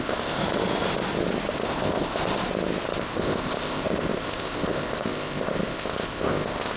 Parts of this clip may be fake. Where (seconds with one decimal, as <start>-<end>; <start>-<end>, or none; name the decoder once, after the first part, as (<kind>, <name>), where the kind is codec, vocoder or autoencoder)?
0.0-0.4 (codec, ZipCodec); 1.5-2.2; 3.0-6.8